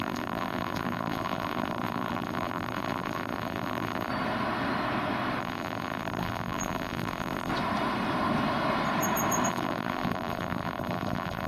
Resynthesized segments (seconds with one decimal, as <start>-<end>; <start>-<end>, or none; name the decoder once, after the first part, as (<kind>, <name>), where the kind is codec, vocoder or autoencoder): 0.0-4.1 (vocoder, BigVGAN v2); 5.4-7.5; 9.5-11.5